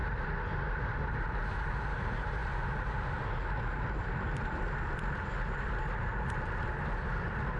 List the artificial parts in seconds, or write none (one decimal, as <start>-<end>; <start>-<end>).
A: none